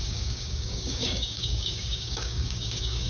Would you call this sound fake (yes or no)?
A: yes